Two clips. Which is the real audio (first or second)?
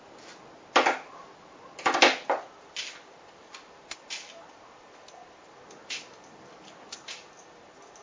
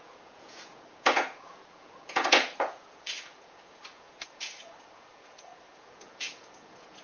first